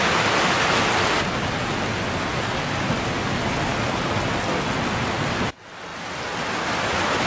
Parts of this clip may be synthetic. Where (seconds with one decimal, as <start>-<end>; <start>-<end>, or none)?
5.9-6.5

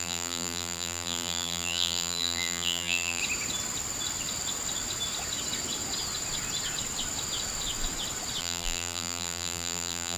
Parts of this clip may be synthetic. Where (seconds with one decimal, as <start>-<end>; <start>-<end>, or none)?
0.0-3.2; 8.4-10.2

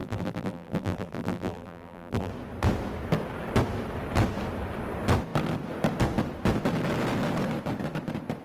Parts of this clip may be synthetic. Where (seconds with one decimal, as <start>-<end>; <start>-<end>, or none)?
0.0-2.3

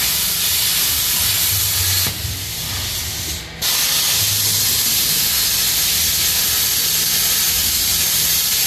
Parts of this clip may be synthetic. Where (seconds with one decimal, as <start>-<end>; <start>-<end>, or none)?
7.6-8.7

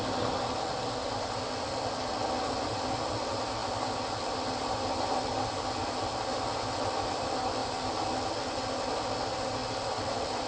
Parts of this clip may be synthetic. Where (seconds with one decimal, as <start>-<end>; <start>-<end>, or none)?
none

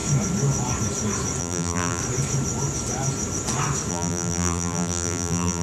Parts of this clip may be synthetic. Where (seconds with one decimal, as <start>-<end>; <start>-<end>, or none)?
1.4-2.0; 3.9-5.6